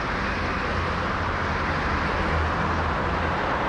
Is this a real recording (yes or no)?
yes